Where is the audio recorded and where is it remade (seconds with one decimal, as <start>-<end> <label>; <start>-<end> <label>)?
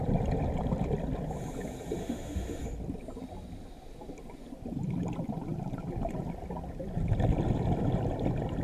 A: 0.0-2.0 recorded; 2.0-2.6 remade; 2.6-8.6 recorded